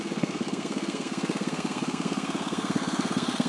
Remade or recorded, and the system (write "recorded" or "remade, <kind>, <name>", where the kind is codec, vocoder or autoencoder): remade, codec, SNAC